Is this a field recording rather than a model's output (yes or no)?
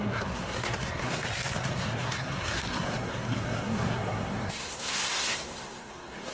no